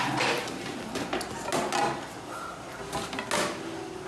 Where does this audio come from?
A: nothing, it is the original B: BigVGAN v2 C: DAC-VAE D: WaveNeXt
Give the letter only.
A